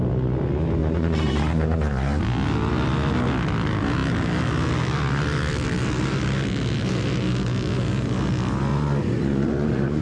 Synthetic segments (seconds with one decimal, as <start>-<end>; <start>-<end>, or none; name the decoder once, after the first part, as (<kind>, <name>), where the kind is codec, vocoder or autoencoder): 0.8-2.2 (vocoder, Vocos); 8.7-10.0